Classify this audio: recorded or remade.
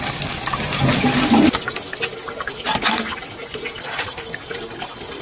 recorded